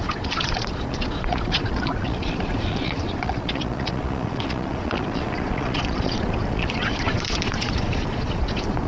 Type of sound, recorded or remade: remade